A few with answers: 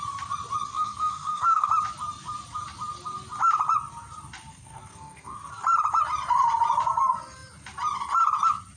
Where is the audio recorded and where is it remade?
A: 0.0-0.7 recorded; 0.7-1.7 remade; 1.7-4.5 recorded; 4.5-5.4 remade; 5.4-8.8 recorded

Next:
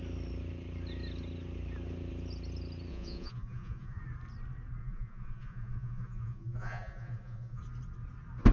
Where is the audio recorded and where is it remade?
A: 0.0-2.9 recorded; 2.9-4.0 remade; 4.0-4.8 recorded; 4.8-7.6 remade; 7.6-8.5 recorded

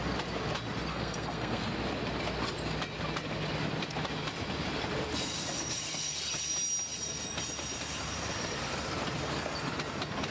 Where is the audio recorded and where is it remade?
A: 0.0-0.9 recorded; 0.9-1.6 remade; 1.6-10.3 recorded

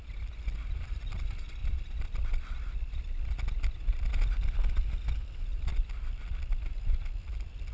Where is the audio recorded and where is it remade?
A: 0.0-7.7 recorded

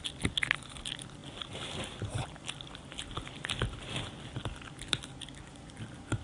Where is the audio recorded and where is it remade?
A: 0.0-6.2 recorded